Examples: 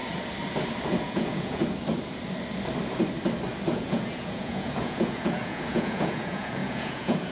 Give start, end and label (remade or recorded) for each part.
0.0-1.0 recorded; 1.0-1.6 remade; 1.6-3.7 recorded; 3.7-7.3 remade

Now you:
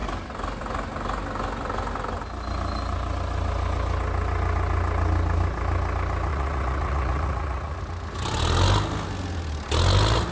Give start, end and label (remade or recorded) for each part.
0.0-6.3 recorded; 6.3-7.8 remade; 7.8-10.3 recorded

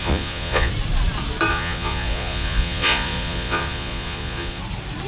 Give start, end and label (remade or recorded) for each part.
0.0-0.7 remade; 0.7-1.5 recorded; 1.5-4.6 remade; 4.6-5.1 recorded

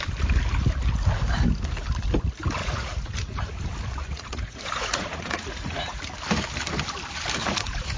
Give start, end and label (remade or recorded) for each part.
0.0-2.6 recorded; 2.6-3.4 remade; 3.4-4.0 recorded; 4.0-6.0 remade; 6.0-7.4 recorded; 7.4-8.0 remade

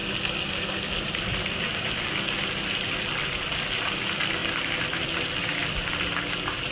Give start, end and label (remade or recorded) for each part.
0.0-6.7 recorded